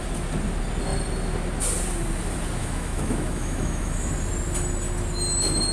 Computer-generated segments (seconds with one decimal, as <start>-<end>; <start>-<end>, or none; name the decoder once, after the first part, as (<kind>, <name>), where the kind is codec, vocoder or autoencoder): 2.6-4.1 (autoencoder, DAC-VAE)